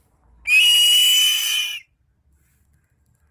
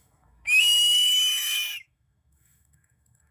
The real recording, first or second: first